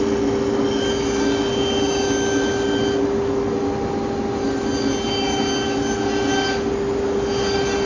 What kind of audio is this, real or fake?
real